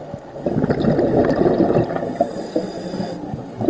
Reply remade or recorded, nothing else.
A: recorded